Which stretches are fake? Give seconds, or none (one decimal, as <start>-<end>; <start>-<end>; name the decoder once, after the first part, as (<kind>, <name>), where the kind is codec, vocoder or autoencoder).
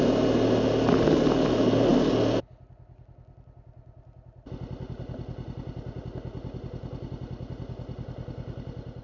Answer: none